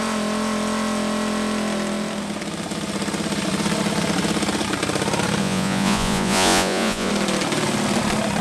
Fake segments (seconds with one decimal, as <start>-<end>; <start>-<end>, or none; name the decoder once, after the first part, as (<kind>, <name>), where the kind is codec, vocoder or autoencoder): 5.4-7.1 (vocoder, Vocos)